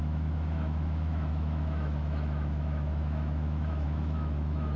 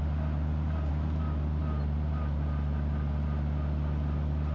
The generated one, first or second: first